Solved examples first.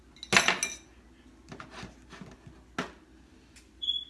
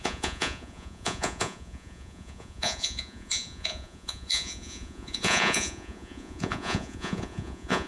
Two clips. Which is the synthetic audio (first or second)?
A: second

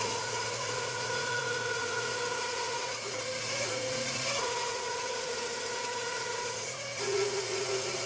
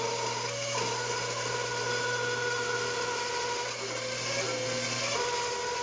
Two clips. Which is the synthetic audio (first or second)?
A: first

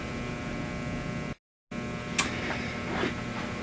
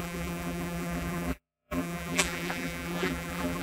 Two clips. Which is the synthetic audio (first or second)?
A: second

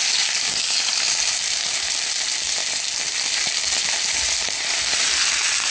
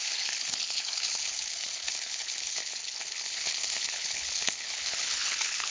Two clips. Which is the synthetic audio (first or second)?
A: second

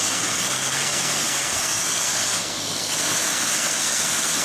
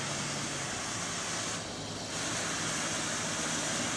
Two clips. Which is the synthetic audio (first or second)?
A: first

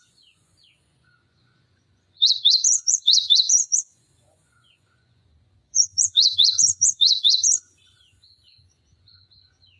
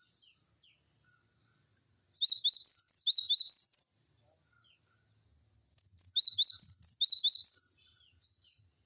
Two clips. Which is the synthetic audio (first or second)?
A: first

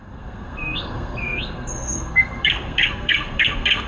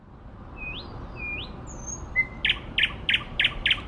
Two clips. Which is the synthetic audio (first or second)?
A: first